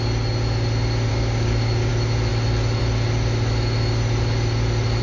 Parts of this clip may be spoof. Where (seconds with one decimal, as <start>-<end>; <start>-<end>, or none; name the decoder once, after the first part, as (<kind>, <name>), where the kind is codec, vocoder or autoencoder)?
1.1-1.9 (codec, DAC)